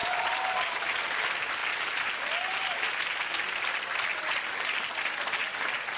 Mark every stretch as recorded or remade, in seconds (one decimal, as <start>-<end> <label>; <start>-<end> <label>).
0.0-6.0 recorded